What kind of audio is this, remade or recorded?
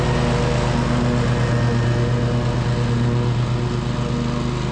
recorded